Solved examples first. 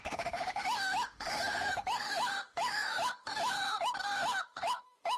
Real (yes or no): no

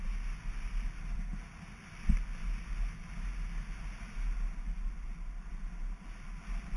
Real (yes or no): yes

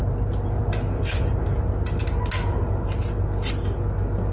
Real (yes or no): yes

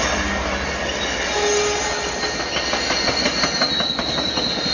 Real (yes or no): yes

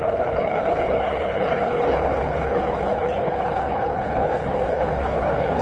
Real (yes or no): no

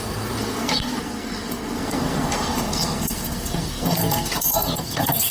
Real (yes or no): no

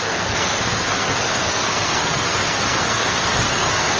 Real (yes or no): no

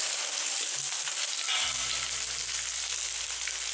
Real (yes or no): yes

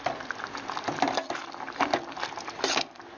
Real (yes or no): yes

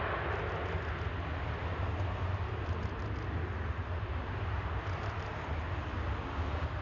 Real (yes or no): yes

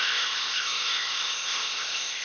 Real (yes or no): no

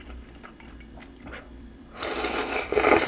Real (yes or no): no